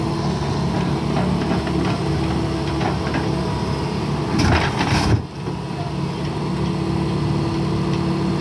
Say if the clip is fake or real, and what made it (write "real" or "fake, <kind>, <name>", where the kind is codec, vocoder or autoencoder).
real